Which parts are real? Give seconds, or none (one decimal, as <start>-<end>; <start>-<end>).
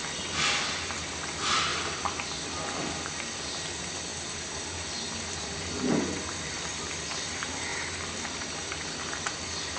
1.7-2.9; 4.1-6.5